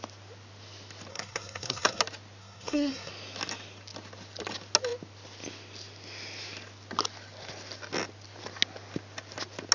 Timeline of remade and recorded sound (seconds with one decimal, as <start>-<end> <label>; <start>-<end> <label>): 0.0-1.1 recorded; 1.1-2.0 remade; 2.0-2.4 recorded; 2.4-3.1 remade; 3.1-9.7 recorded